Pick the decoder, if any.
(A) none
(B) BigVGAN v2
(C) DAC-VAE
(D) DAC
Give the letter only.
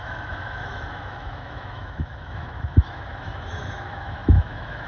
C